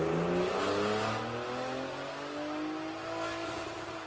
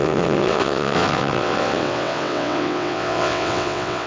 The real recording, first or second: first